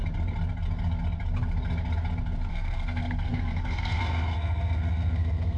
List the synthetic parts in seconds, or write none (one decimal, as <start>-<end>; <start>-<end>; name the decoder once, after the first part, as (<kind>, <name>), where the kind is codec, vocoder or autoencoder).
2.5-5.6 (codec, SNAC)